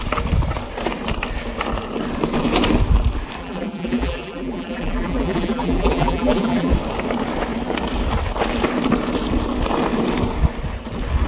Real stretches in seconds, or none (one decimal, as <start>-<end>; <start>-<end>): 0.0-3.4; 6.7-11.3